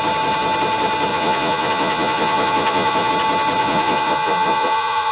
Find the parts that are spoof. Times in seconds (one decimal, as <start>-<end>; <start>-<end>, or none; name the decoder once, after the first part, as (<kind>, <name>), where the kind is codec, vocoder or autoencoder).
1.1-3.1 (vocoder, Vocos); 3.6-5.1